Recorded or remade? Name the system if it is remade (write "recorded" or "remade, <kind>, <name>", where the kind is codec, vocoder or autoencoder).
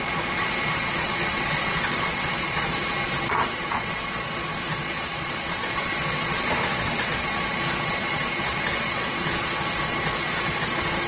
remade, vocoder, Vocos